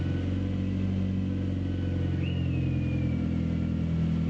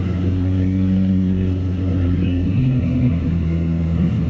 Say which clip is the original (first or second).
first